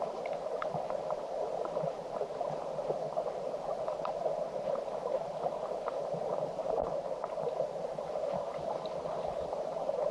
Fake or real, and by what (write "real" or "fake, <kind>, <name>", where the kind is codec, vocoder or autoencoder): real